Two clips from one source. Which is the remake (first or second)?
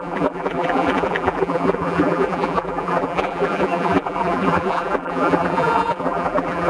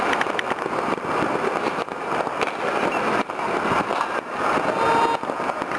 first